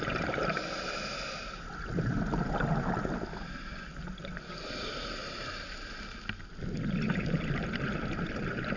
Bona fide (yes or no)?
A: yes